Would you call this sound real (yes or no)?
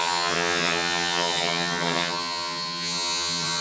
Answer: no